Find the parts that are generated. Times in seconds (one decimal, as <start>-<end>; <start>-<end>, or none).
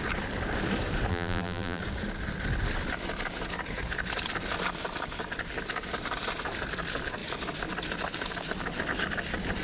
1.1-1.8